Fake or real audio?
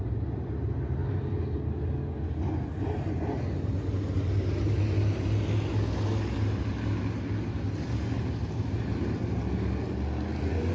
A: real